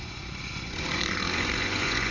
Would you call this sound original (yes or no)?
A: no